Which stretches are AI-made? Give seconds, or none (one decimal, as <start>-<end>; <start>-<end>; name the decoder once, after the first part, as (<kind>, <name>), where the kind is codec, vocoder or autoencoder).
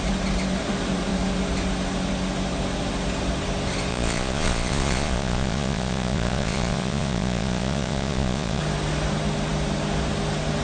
3.9-8.6 (vocoder, Vocos)